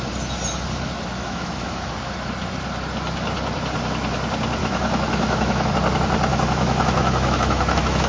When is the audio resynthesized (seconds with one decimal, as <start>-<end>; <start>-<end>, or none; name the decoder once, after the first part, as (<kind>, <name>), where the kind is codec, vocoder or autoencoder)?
1.2-1.9 (autoencoder, DAC-VAE); 4.6-5.7; 6.3-8.1